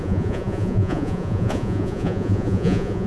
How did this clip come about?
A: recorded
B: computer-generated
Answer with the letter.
B